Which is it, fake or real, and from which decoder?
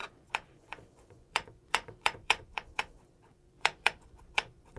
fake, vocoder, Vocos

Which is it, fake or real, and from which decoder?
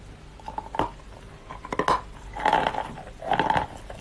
real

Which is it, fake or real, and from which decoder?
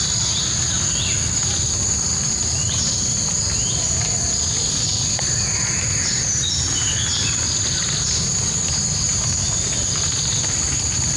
real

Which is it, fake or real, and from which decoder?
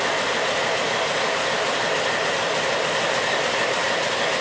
real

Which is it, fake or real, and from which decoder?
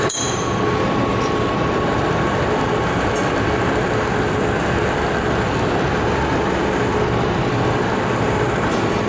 real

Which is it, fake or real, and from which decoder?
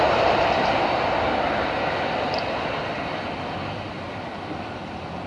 real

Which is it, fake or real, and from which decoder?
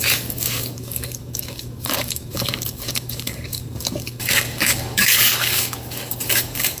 fake, codec, DAC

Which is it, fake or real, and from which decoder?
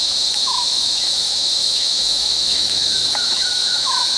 fake, autoencoder, DAC-VAE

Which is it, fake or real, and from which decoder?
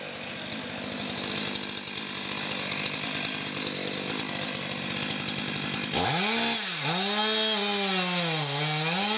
real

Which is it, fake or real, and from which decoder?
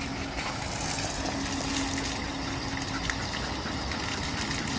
real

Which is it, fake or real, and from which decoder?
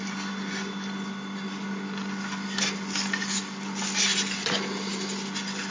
real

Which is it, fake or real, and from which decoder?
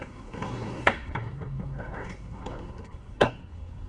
fake, codec, SNAC